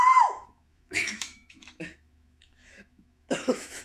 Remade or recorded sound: remade